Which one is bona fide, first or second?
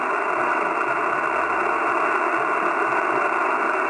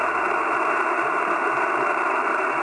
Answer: first